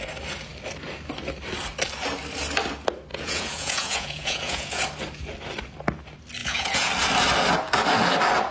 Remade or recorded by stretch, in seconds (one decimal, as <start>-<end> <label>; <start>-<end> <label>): 0.0-3.1 recorded; 3.1-4.8 remade; 4.8-6.4 recorded; 6.4-6.9 remade; 6.9-8.5 recorded